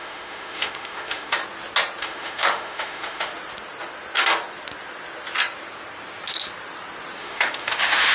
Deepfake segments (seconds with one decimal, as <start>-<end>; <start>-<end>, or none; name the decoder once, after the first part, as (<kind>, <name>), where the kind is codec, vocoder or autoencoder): 0.0-1.4 (autoencoder, DAC-VAE); 2.0-3.3; 7.2-8.1